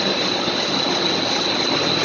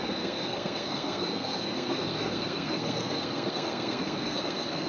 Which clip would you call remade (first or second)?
second